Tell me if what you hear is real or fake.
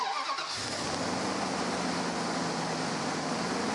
real